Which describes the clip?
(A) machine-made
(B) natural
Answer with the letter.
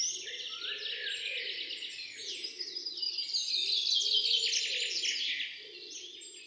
B